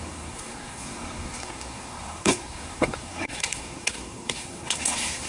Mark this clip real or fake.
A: fake